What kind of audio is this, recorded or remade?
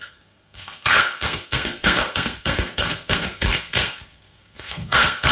remade